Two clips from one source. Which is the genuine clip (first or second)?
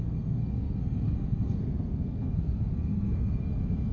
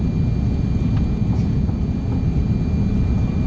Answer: second